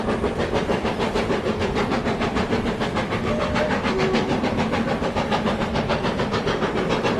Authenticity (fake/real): fake